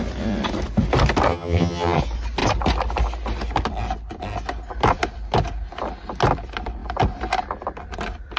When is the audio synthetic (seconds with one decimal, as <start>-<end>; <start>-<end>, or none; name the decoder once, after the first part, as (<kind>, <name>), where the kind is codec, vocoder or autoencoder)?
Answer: 1.3-2.0 (vocoder, HiFi-GAN)